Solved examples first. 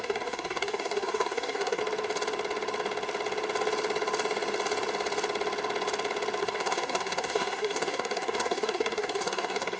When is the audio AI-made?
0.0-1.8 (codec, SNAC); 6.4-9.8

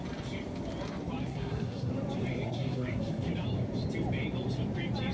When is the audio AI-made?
1.3-1.9 (codec, SNAC); 2.3-3.3

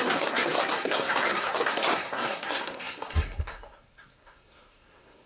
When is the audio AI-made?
0.0-5.3 (codec, SNAC)

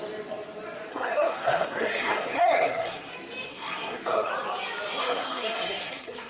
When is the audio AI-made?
0.9-3.1 (codec, SNAC); 3.5-4.3; 5.0-6.3

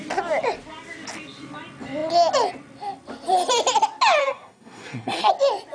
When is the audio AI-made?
4.2-5.3 (codec, SNAC)